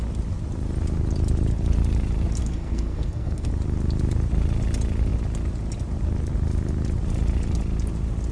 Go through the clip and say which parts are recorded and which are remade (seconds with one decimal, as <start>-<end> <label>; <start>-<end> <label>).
0.0-2.4 recorded; 2.4-3.5 remade; 3.5-8.3 recorded